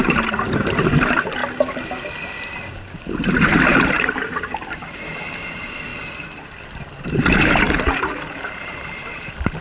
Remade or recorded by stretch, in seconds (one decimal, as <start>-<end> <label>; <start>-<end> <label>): 0.0-1.4 remade; 1.4-3.7 recorded; 3.7-5.9 remade; 5.9-7.6 recorded; 7.6-9.6 remade